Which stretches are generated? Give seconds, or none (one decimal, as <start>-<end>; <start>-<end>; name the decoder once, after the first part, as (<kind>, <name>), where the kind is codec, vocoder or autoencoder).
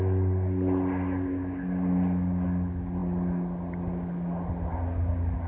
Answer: none